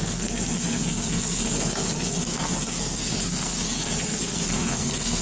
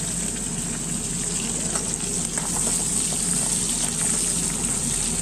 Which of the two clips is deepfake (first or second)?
first